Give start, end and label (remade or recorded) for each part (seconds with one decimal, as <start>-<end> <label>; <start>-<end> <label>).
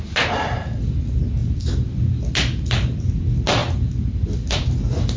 0.0-5.2 recorded